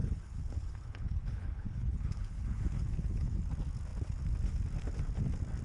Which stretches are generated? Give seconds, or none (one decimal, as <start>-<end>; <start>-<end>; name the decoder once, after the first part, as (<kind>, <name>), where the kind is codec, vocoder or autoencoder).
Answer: 0.0-3.4 (codec, HILCodec)